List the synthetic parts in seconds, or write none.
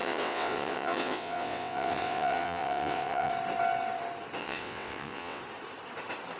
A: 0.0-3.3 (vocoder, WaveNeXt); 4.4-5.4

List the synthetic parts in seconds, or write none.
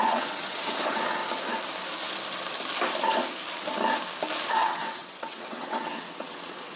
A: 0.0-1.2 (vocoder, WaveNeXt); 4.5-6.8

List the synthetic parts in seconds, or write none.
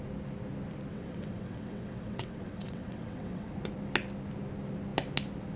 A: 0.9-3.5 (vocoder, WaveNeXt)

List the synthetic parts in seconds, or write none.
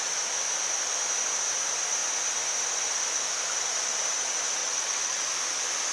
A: 4.6-5.2 (vocoder, WaveNeXt)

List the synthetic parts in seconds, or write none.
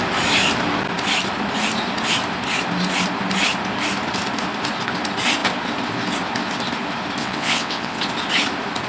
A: 7.2-8.0 (vocoder, WaveNeXt)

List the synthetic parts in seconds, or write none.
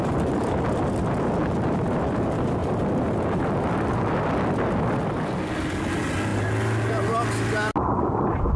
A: none